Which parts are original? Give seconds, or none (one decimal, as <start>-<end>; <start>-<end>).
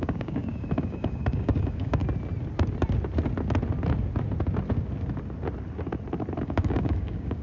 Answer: 2.0-6.4